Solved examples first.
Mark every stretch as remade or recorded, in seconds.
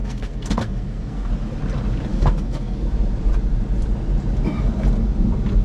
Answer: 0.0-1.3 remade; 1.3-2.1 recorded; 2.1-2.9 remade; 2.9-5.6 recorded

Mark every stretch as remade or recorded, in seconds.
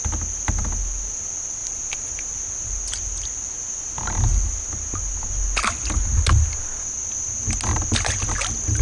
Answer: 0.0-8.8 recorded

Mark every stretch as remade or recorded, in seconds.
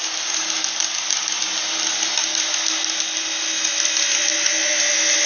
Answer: 0.0-5.3 recorded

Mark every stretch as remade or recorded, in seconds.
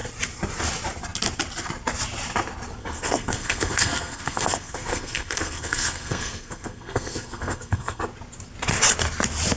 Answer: 0.0-2.8 recorded; 2.8-8.0 remade; 8.0-9.6 recorded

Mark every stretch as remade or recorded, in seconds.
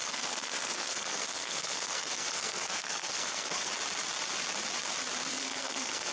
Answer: 0.0-3.7 remade; 3.7-5.3 recorded; 5.3-6.1 remade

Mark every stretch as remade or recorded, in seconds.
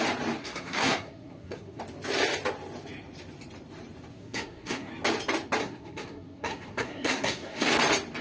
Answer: 0.0-0.4 recorded; 0.4-1.8 remade; 1.8-4.1 recorded; 4.1-4.9 remade; 4.9-5.6 recorded; 5.6-7.7 remade; 7.7-8.2 recorded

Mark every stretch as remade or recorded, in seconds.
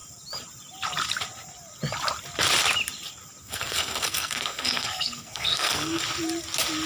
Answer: 0.0-3.4 recorded; 3.4-6.0 remade; 6.0-6.9 recorded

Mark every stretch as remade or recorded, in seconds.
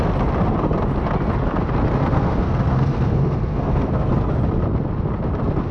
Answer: 0.0-2.0 recorded; 2.0-4.1 remade; 4.1-5.7 recorded